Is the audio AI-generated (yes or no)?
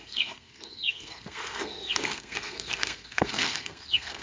yes